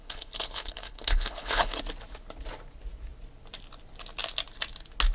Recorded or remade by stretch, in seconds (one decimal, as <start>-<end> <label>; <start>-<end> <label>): 0.0-1.8 remade; 1.8-5.1 recorded